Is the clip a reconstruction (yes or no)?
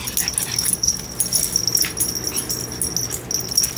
no